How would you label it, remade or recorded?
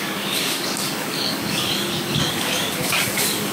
remade